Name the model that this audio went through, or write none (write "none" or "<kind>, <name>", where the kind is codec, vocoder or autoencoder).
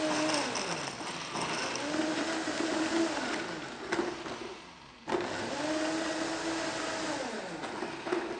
none